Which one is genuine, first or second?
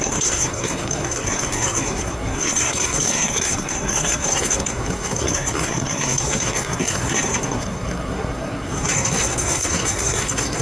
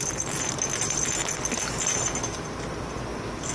second